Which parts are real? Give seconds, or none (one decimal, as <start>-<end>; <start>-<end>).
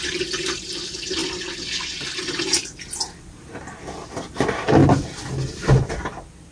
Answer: 0.0-6.5